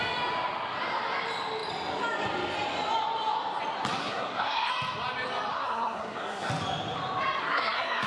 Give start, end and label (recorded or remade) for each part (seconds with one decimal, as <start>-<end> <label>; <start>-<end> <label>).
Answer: 0.0-4.0 recorded; 4.0-4.7 remade; 4.7-5.5 recorded; 5.5-6.5 remade; 6.5-7.4 recorded; 7.4-8.1 remade